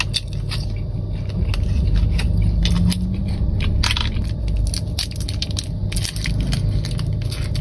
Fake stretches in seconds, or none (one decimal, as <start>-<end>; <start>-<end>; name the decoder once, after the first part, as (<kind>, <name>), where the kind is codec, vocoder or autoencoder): none